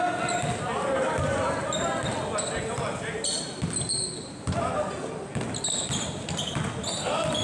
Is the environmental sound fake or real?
real